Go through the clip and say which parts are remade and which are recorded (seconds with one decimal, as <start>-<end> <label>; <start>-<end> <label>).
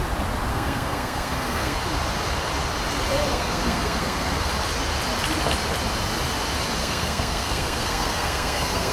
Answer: 0.0-0.5 recorded; 0.5-1.8 remade; 1.8-3.3 recorded; 3.3-4.5 remade; 4.5-6.8 recorded; 6.8-8.9 remade